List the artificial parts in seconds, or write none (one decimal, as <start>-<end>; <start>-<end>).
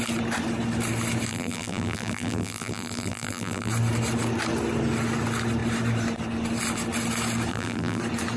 1.3-3.7; 7.5-8.0